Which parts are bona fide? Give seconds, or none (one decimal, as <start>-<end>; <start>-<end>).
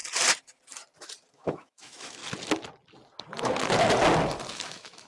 0.0-1.3; 2.2-4.5